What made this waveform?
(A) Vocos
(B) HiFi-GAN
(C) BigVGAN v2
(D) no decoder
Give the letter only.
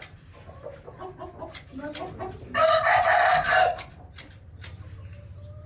D